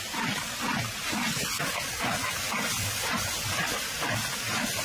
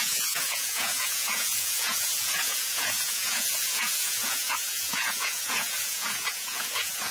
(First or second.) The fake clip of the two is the second